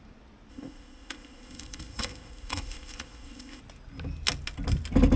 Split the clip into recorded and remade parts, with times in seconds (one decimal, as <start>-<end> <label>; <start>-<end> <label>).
0.0-0.5 recorded; 0.5-3.6 remade; 3.6-5.2 recorded